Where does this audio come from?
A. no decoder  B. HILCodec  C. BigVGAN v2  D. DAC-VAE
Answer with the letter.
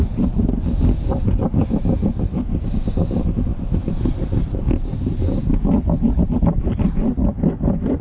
C